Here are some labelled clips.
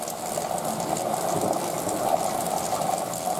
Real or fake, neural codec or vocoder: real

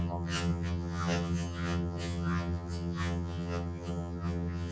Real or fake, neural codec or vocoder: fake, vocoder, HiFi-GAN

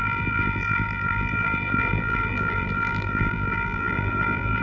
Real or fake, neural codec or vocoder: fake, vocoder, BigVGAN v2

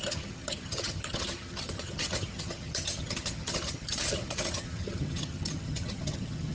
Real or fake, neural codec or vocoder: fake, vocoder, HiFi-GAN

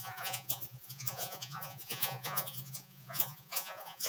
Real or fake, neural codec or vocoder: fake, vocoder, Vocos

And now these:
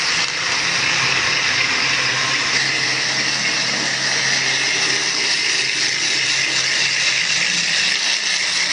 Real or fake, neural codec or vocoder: real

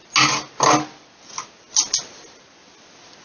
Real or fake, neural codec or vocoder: real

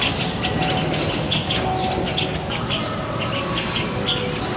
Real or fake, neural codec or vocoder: real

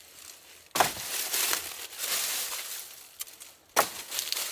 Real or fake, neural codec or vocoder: real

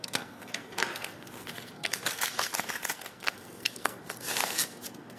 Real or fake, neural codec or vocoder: fake, codec, SNAC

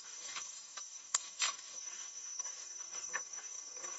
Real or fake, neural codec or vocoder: fake, codec, DAC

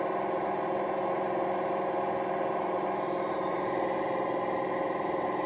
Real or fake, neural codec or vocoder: fake, vocoder, BigVGAN v2